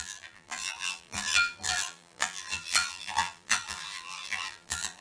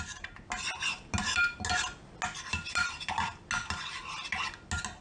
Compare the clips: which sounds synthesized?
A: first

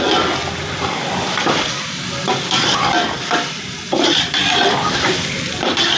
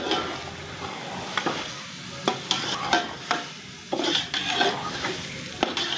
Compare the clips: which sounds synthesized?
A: first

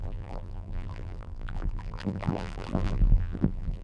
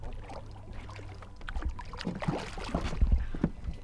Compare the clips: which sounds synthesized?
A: first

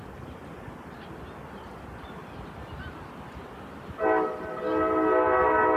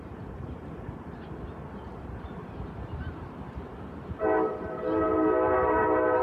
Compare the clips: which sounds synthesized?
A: second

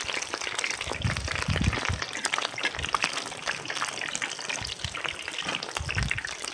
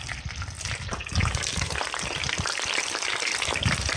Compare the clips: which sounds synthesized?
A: second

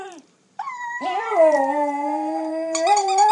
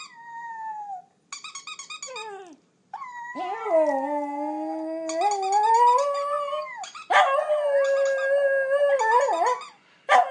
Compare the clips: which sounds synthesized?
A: first